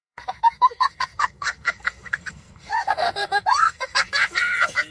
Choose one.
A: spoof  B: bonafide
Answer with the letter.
A